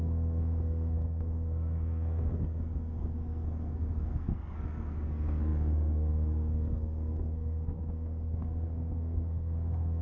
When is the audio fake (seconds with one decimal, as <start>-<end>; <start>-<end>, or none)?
0.0-10.0